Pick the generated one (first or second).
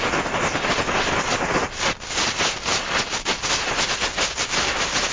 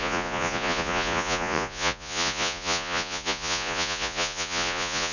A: second